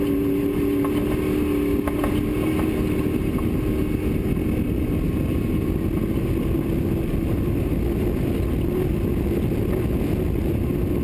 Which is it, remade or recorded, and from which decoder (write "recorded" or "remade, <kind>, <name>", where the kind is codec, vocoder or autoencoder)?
recorded